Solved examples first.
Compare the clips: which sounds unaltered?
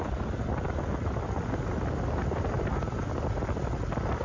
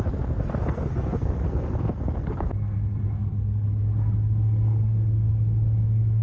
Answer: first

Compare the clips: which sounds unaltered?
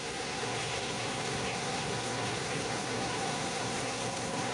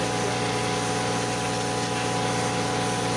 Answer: second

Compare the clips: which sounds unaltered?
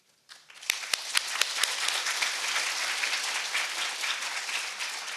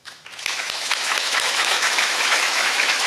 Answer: first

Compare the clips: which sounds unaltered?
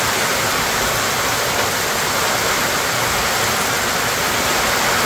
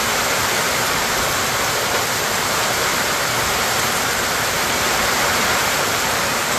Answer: first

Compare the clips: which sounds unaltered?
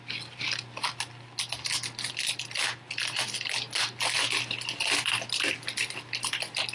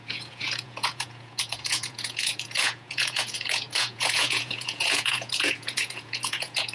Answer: first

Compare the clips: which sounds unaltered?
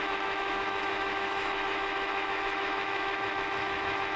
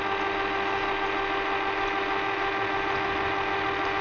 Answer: second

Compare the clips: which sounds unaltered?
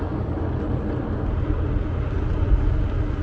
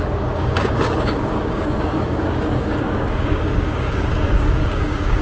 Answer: first